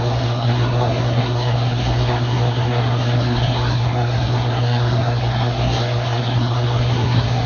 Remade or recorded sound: remade